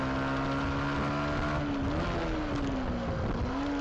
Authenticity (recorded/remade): recorded